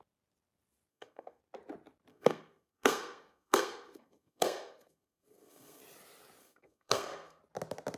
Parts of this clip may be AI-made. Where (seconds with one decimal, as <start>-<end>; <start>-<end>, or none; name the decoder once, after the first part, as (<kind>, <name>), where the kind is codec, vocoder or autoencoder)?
0.9-1.4 (codec, SNAC); 2.1-5.8; 6.4-7.4